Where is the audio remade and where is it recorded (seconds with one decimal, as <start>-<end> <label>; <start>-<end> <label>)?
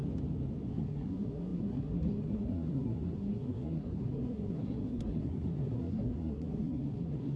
0.0-0.7 recorded; 0.7-7.4 remade